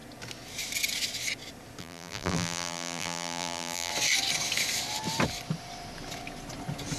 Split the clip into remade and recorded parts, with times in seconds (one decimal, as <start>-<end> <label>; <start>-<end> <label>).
0.0-1.8 recorded; 1.8-3.9 remade; 3.9-7.0 recorded